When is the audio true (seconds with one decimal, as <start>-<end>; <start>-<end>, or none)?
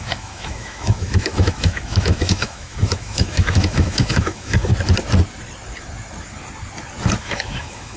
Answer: 4.7-7.2